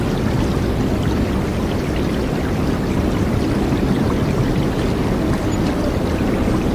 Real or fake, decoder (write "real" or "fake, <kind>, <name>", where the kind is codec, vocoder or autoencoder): real